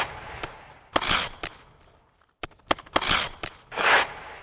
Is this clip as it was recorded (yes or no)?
yes